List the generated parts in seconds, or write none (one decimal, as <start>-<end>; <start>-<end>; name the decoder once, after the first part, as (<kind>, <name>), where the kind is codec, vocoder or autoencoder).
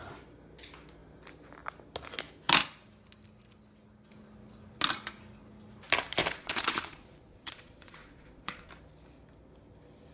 6.2-8.7 (vocoder, Vocos)